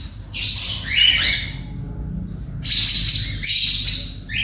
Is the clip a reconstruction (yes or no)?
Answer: no